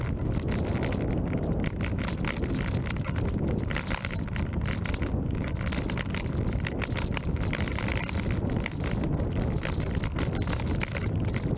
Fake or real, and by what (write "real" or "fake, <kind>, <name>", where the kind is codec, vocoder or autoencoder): real